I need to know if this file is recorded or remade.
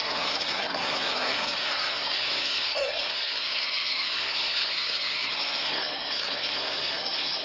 remade